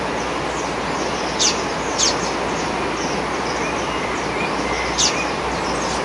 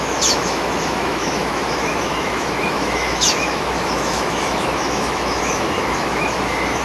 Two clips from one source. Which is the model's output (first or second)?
second